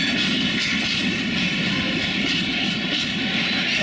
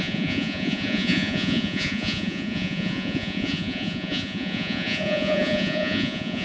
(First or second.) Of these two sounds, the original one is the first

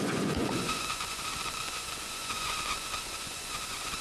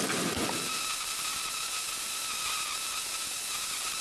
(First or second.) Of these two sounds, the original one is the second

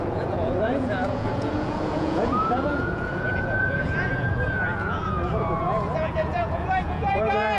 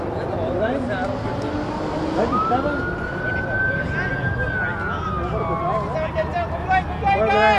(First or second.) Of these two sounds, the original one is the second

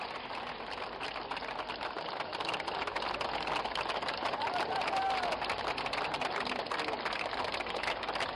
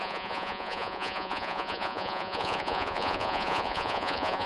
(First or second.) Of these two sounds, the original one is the first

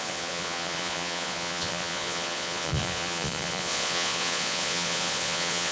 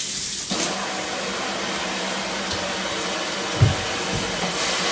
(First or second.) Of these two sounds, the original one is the second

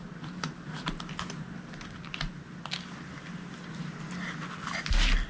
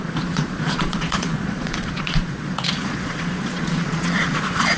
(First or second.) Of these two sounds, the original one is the first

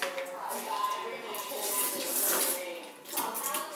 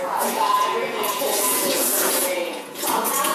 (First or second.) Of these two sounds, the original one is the first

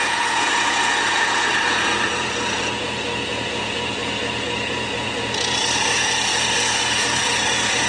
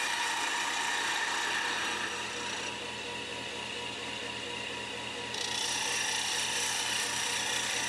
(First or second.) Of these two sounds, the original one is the second